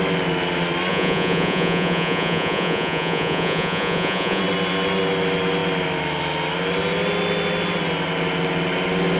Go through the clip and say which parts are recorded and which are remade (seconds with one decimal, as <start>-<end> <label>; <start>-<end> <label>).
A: 0.0-0.9 recorded; 0.9-4.4 remade; 4.4-9.2 recorded